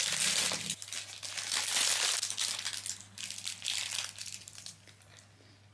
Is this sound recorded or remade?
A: recorded